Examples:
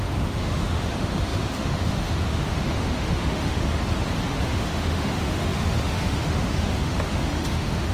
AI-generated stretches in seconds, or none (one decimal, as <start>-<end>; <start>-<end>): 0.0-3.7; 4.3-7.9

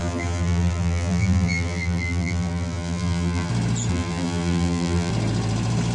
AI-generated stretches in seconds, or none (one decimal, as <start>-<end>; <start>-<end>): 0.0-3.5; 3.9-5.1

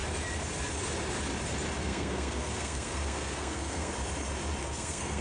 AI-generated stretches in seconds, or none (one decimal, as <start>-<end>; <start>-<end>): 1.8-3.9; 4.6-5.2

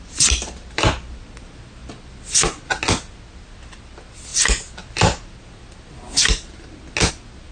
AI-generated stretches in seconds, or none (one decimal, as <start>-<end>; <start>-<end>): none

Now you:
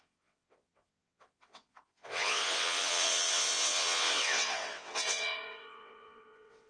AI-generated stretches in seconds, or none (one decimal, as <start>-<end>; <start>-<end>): 0.0-6.7

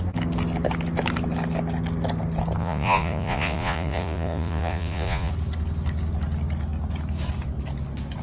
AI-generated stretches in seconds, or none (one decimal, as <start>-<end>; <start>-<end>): 2.6-5.3

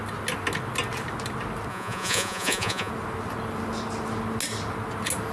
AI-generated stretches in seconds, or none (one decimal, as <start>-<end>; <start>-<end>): 1.7-2.9